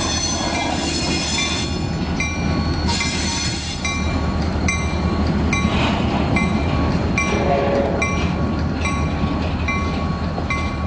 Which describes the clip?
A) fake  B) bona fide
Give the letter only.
B